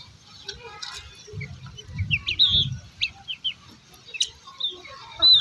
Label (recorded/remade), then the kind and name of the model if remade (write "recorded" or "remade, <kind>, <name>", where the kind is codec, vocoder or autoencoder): recorded